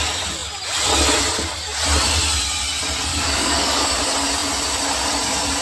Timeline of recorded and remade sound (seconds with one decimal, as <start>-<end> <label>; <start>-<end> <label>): 0.0-3.1 recorded; 3.1-4.0 remade; 4.0-5.6 recorded